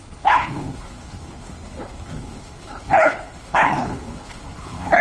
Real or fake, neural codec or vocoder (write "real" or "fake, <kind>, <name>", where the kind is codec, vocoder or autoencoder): fake, codec, HILCodec